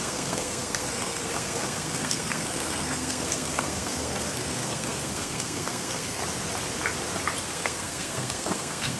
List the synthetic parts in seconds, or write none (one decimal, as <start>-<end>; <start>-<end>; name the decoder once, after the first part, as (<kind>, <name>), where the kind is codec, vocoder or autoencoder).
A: 0.0-6.2 (codec, SNAC); 7.4-9.0